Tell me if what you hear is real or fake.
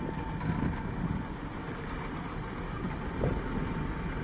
real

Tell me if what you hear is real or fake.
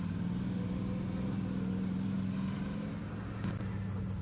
real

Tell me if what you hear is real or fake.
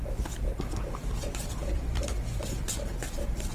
fake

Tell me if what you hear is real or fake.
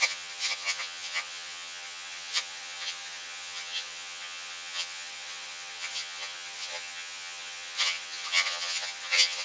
fake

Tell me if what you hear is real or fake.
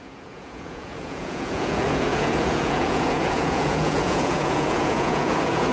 fake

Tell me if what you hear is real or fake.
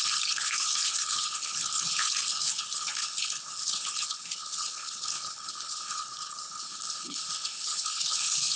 fake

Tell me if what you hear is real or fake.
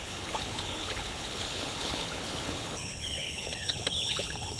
fake